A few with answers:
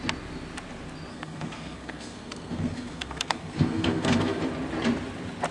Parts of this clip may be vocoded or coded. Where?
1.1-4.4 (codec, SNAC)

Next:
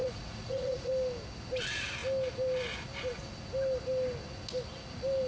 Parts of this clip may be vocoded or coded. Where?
0.0-0.9 (vocoder, Vocos)